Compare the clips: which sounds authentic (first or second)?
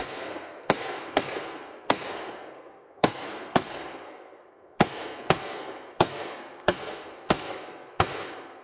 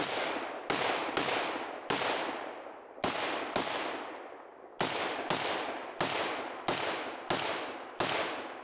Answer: second